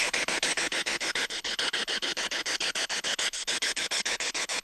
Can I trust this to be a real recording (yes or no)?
no